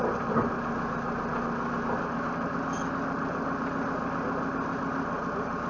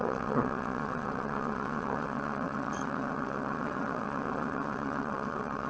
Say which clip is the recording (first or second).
first